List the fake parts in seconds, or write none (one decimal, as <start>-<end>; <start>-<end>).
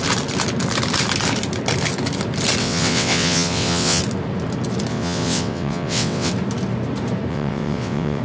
2.6-4.0; 4.9-6.3; 7.3-8.2